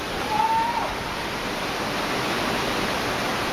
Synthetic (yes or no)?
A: no